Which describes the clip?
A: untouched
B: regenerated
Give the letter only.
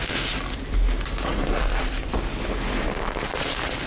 A